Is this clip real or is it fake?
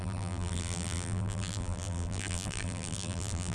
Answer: fake